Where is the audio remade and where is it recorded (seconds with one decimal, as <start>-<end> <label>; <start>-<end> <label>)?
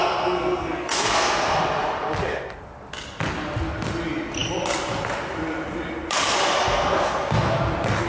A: 0.0-1.6 remade; 1.6-6.6 recorded; 6.6-7.6 remade; 7.6-8.1 recorded